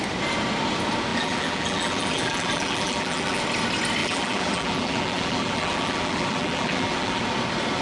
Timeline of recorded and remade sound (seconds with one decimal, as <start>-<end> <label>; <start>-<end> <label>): 0.0-1.1 recorded; 1.1-3.4 remade; 3.4-4.0 recorded; 4.0-7.2 remade; 7.2-7.8 recorded